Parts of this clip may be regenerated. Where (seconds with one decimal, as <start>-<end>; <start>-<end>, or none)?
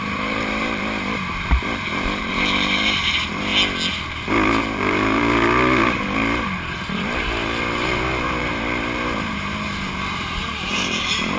0.0-3.5; 4.0-11.4